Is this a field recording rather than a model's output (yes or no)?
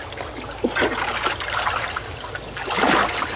yes